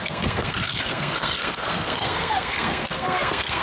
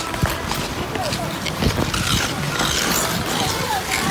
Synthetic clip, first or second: first